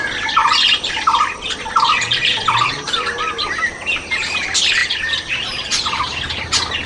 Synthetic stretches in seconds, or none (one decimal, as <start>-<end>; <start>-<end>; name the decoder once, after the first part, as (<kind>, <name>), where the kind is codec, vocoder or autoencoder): 0.4-3.3 (vocoder, BigVGAN v2); 4.8-5.3